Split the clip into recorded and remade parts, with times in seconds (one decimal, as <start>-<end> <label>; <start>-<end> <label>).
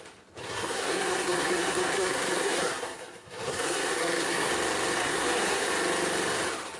0.0-0.4 recorded; 0.4-4.5 remade; 4.5-5.0 recorded; 5.0-5.7 remade; 5.7-6.8 recorded